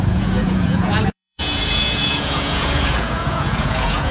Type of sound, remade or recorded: remade